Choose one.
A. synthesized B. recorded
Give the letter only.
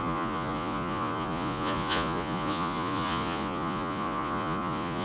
A